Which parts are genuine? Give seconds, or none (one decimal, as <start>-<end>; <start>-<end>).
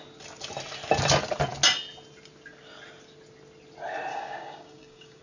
0.0-4.1